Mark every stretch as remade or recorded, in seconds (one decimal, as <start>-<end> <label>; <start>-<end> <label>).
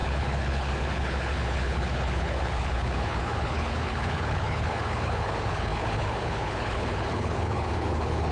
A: 0.0-8.3 remade